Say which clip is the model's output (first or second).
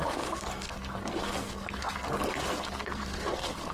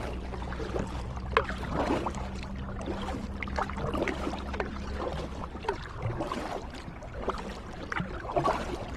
first